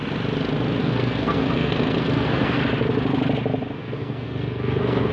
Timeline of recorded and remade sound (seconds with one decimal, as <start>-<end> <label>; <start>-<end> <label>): 0.0-0.8 recorded; 0.8-2.6 remade; 2.6-3.8 recorded; 3.8-5.1 remade